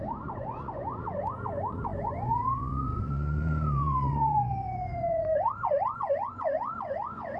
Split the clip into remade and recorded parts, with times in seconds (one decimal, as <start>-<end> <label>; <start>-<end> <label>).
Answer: 0.0-7.4 remade